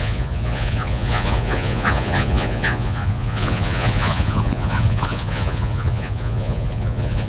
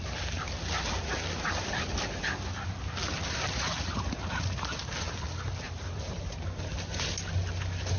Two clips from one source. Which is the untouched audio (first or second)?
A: second